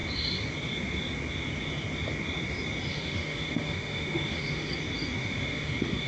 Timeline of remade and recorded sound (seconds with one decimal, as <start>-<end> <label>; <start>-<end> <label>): 0.0-2.9 recorded; 2.9-4.7 remade; 4.7-5.2 recorded; 5.2-6.1 remade